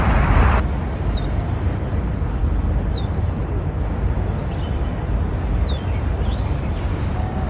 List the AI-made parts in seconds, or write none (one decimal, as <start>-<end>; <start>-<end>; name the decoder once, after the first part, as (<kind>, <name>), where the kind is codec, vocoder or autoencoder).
6.9-7.5 (codec, DAC)